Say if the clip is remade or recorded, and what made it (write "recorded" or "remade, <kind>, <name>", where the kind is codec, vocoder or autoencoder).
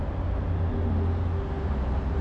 recorded